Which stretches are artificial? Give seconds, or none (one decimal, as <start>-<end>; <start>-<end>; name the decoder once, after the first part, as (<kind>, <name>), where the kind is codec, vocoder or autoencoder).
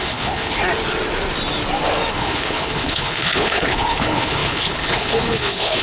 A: 0.0-0.6 (codec, HILCodec); 2.1-5.8